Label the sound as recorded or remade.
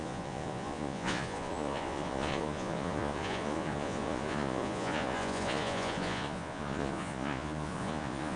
remade